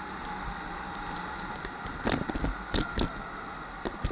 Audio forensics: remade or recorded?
recorded